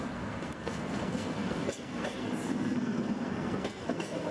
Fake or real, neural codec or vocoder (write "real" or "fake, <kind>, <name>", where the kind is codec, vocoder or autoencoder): fake, codec, SNAC